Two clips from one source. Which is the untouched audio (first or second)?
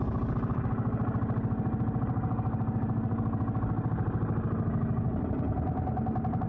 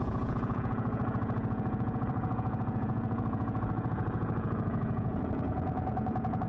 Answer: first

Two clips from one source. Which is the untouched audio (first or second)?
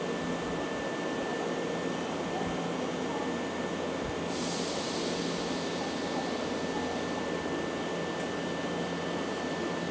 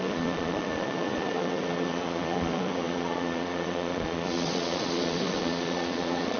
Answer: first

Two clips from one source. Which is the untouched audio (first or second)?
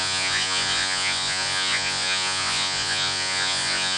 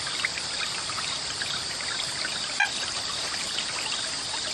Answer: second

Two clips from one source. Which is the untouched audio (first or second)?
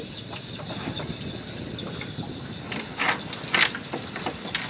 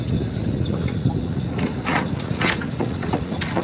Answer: first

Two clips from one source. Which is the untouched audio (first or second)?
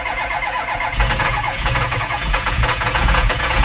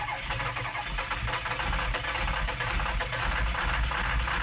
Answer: second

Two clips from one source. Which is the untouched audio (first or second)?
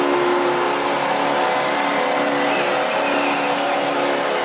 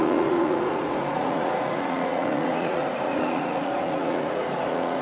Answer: first